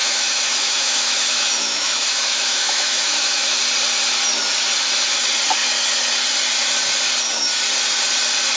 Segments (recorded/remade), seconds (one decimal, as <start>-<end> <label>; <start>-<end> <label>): 0.0-3.6 remade; 3.6-8.6 recorded